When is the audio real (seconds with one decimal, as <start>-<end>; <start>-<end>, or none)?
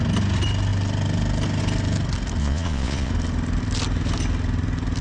0.0-2.4; 3.1-5.0